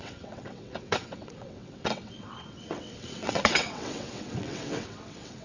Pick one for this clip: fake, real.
fake